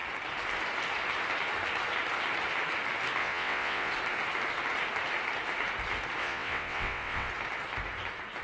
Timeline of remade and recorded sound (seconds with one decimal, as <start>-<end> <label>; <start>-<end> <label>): 0.0-3.2 recorded; 3.2-3.9 remade; 3.9-6.2 recorded; 6.2-7.3 remade; 7.3-8.4 recorded

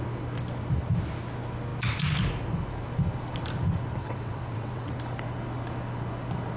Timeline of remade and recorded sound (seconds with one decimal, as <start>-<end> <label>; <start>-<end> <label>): 0.0-4.0 recorded; 4.0-4.9 remade; 4.9-6.6 recorded

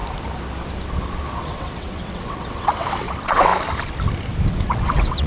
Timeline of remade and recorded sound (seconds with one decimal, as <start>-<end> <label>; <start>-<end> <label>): 0.0-1.4 recorded; 1.4-3.5 remade; 3.5-4.5 recorded; 4.5-5.3 remade